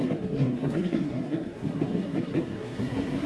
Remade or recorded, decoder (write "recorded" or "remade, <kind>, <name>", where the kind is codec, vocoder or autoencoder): remade, codec, SNAC